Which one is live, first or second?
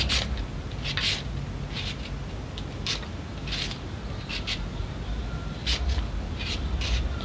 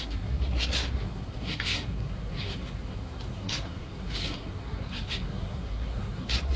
first